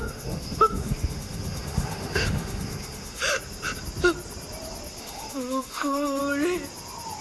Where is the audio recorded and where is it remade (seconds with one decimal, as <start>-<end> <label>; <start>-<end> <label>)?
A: 0.0-3.2 remade; 3.2-5.0 recorded; 5.0-6.2 remade; 6.2-7.2 recorded